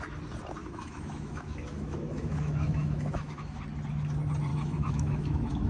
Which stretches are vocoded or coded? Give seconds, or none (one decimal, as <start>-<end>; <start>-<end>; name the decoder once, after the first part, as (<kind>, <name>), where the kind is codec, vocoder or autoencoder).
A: 0.6-3.6 (autoencoder, DAC-VAE); 4.5-5.7